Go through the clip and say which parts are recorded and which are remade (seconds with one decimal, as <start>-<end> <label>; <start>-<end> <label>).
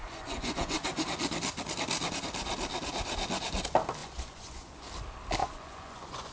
0.0-1.0 remade; 1.0-4.0 recorded; 4.0-4.9 remade; 4.9-5.4 recorded; 5.4-6.3 remade